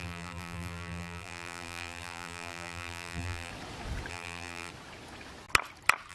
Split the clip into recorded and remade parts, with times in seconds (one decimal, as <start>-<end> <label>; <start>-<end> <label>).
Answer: 0.0-3.5 remade; 3.5-4.1 recorded; 4.1-4.7 remade; 4.7-6.1 recorded